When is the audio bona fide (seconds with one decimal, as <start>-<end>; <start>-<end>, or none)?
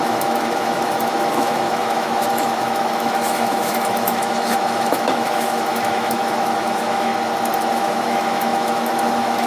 7.1-7.7